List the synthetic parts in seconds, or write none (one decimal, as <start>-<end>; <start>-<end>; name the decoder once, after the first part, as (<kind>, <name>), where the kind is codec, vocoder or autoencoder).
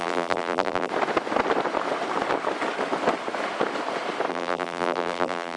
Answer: 0.0-0.9 (vocoder, BigVGAN v2); 4.3-5.6